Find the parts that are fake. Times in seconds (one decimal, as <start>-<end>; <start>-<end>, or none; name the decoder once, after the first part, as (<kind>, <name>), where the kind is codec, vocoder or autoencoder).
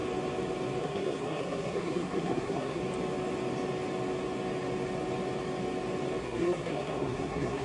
0.8-2.8 (codec, SNAC); 6.2-7.6